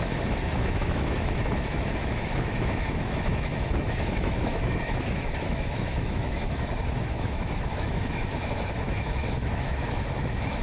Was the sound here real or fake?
fake